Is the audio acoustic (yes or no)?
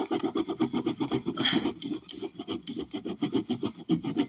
yes